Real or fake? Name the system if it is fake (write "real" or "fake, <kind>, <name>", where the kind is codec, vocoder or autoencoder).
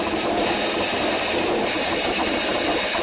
fake, vocoder, BigVGAN v2